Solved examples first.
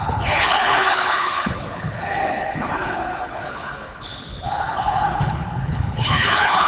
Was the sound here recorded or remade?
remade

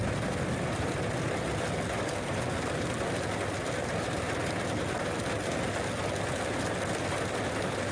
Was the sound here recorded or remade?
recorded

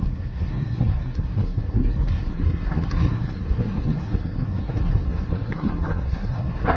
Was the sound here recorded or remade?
remade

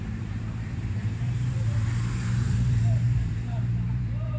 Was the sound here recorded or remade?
remade